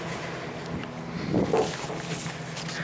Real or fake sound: real